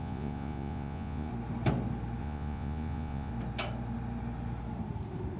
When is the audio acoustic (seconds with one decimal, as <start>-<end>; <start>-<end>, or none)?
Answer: 1.3-2.2; 3.3-5.4